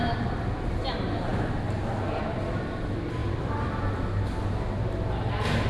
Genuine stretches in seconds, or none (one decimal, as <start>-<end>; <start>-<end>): 0.7-3.2; 4.2-5.7